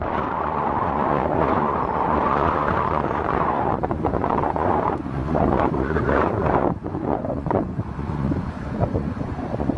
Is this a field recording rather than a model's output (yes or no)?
no